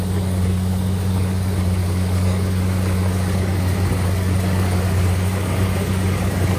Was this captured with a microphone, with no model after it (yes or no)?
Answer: no